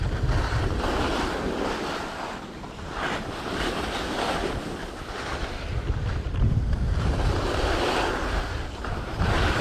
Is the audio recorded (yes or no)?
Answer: yes